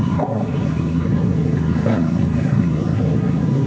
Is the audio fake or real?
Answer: fake